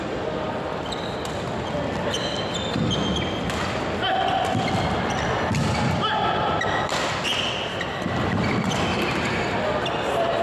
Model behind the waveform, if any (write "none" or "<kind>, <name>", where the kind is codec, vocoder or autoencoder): none